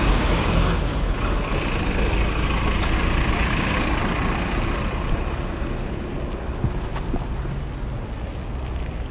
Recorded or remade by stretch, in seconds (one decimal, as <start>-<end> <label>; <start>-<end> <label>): 0.0-0.9 remade; 0.9-3.3 recorded; 3.3-4.0 remade; 4.0-9.1 recorded